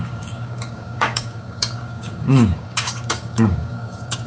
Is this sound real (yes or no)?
no